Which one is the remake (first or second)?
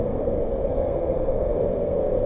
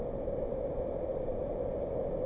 first